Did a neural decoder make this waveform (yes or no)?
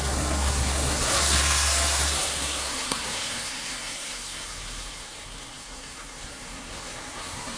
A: yes